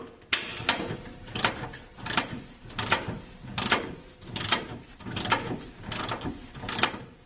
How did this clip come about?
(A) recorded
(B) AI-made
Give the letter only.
B